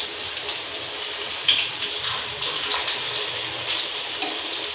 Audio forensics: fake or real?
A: fake